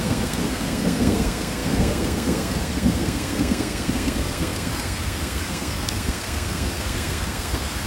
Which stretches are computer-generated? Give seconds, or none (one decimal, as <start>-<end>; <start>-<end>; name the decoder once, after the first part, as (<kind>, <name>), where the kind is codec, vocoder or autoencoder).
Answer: 0.0-7.9 (codec, SNAC)